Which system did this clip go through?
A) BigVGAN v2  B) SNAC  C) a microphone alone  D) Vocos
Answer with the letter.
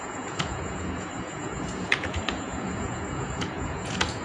D